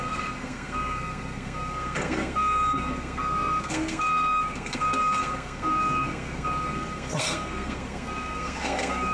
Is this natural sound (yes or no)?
no